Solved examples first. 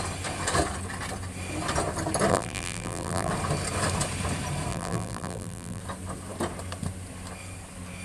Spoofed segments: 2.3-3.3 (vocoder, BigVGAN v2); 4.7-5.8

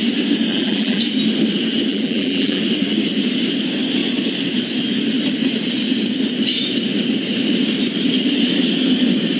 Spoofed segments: 0.5-1.0 (vocoder, BigVGAN v2); 1.9-2.6

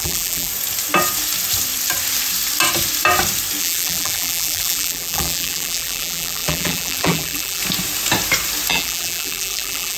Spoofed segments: 0.0-0.5 (vocoder, BigVGAN v2); 3.6-7.6; 8.7-10.0

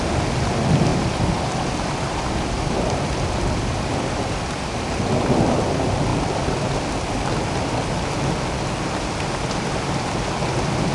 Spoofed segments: 0.9-5.1 (vocoder, BigVGAN v2); 6.1-7.1

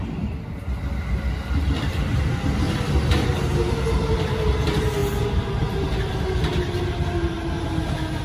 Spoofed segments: none

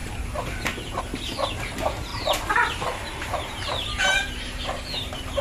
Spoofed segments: 0.0-1.0 (vocoder, BigVGAN v2); 2.1-5.4

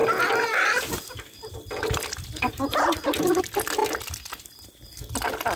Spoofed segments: none

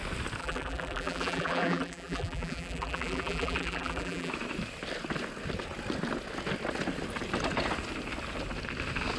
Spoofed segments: 0.4-4.3 (vocoder, BigVGAN v2)